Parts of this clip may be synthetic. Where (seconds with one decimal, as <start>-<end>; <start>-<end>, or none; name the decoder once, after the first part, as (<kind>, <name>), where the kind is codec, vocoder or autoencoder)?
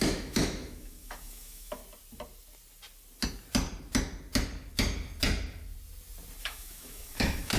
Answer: 0.0-1.8 (autoencoder, DAC-VAE); 6.4-7.6